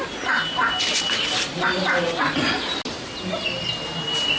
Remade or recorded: recorded